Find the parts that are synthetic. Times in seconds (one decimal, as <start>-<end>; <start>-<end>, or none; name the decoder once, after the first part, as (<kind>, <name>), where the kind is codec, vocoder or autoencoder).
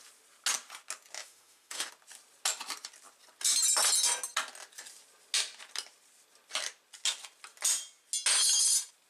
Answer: 1.2-1.9 (autoencoder, DAC-VAE)